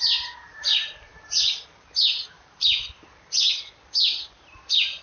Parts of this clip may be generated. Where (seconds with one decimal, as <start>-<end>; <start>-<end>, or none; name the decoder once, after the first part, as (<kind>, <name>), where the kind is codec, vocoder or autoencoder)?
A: 0.0-1.1 (vocoder, BigVGAN v2); 2.0-2.8; 4.0-5.0